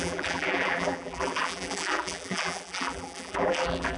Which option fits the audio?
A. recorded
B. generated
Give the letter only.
B